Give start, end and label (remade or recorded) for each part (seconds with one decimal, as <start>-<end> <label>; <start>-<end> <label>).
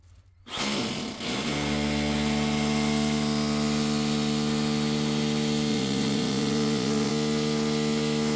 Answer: 0.0-5.7 recorded; 5.7-7.1 remade; 7.1-8.4 recorded